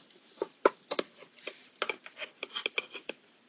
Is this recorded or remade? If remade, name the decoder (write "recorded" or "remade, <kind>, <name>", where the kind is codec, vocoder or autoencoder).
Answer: recorded